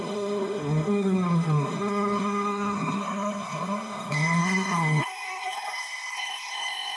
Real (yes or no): no